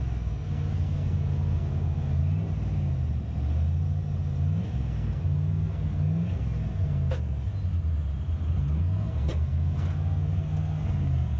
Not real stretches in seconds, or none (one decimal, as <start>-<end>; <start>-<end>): 0.0-2.2; 4.6-7.5; 8.6-11.4